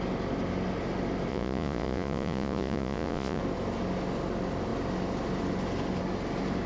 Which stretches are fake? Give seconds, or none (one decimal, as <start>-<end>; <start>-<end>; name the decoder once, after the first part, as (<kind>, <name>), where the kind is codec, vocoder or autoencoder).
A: 1.3-3.4 (vocoder, Vocos)